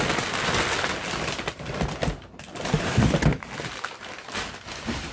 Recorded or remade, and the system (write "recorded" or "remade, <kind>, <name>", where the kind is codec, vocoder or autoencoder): recorded